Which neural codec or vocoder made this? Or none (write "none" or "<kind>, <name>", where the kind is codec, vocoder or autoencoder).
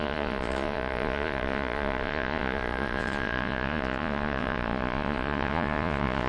vocoder, Vocos